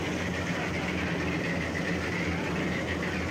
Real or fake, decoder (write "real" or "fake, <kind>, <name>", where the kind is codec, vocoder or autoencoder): real